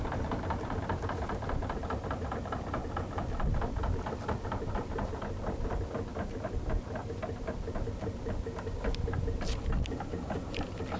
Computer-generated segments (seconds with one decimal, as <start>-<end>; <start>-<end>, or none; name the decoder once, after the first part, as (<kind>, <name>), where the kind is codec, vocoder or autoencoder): 2.8-5.8 (vocoder, BigVGAN v2)